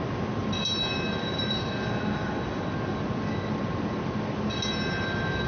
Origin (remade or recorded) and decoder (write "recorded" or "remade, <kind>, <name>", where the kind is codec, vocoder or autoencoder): recorded